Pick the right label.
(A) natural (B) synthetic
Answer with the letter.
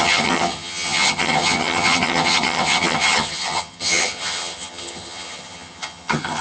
B